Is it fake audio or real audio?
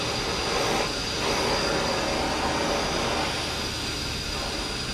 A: real